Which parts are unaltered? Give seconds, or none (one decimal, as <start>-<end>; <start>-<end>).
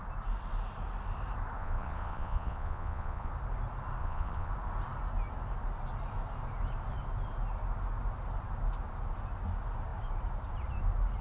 0.0-1.6; 3.3-4.0; 4.5-11.2